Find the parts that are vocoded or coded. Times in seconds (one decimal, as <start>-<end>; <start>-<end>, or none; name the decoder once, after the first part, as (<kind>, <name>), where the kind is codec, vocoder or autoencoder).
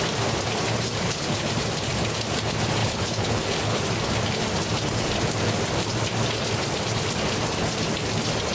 1.0-1.5 (codec, HILCodec); 2.8-3.8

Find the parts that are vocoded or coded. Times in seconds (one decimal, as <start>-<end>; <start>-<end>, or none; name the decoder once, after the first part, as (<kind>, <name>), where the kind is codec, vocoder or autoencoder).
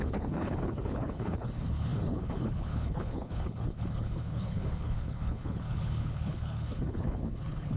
0.0-7.8 (codec, HILCodec)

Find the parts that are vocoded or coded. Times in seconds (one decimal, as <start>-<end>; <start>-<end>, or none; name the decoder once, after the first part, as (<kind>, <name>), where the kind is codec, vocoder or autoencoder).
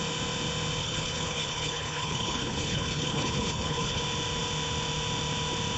0.8-4.0 (codec, HILCodec)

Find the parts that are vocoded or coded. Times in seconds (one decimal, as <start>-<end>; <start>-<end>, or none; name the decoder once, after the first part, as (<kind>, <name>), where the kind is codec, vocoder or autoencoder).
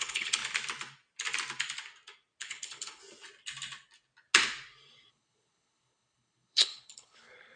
0.0-0.4 (codec, HILCodec); 2.4-3.0; 5.1-7.6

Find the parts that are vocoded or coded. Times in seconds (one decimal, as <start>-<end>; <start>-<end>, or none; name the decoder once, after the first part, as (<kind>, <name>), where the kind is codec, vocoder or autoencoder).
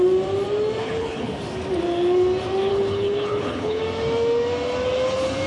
0.8-1.3 (codec, HILCodec); 2.7-3.8